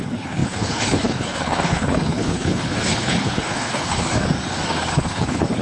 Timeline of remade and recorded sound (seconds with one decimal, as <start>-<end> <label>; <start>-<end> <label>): 0.0-4.0 remade; 4.0-4.9 recorded; 4.9-5.6 remade